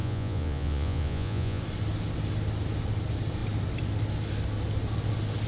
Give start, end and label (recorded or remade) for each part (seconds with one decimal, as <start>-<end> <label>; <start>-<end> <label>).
0.0-1.6 remade; 1.6-5.5 recorded